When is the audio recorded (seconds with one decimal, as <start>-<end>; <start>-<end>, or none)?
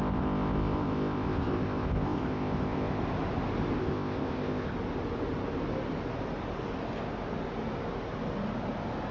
3.0-3.8; 4.7-9.1